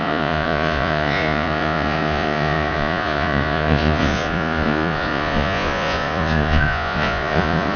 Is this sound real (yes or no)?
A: no